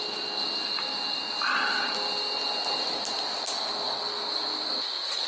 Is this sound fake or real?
real